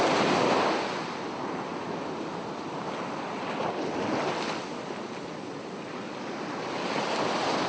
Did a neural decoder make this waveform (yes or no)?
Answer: no